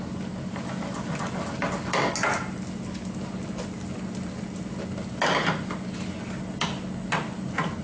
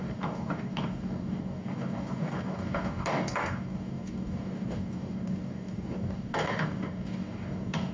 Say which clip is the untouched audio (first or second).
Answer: first